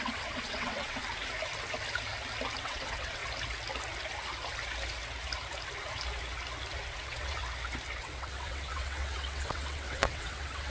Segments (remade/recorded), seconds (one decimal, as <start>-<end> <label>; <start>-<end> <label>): 0.0-1.0 remade; 1.0-2.6 recorded; 2.6-3.2 remade; 3.2-7.0 recorded; 7.0-7.4 remade; 7.4-8.0 recorded; 8.0-10.7 remade